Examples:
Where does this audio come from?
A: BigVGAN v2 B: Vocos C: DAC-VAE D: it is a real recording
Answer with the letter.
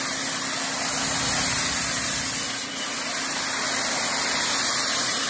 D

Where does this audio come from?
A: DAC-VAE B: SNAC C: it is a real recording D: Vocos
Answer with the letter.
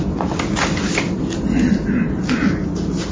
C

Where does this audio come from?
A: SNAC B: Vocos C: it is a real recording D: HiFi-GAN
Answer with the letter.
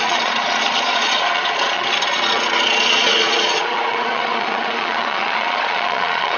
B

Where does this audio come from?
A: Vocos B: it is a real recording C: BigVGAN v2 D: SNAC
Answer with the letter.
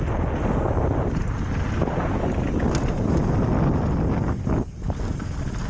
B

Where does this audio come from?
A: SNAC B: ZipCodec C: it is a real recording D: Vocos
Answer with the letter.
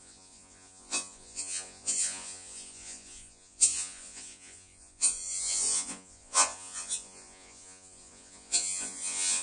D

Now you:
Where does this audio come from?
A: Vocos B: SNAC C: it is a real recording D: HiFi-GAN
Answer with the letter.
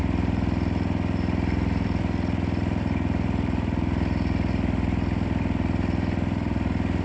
C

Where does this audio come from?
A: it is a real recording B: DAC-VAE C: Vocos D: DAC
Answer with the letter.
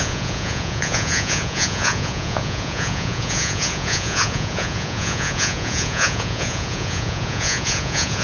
C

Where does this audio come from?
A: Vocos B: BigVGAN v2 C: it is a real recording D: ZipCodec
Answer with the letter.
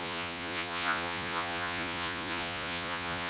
A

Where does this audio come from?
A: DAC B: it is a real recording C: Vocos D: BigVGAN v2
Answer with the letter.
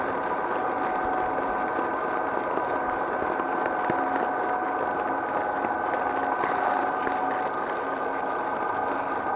B